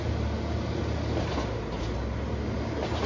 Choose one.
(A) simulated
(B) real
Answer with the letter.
B